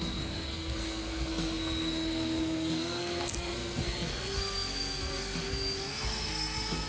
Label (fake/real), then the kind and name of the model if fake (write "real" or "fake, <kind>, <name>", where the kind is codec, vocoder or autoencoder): fake, codec, SNAC